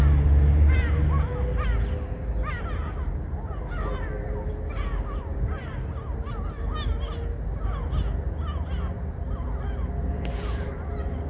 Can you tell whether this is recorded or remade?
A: recorded